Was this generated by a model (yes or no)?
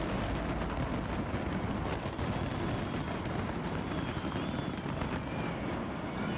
no